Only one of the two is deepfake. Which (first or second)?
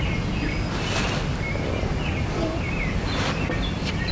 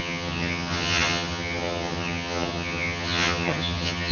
second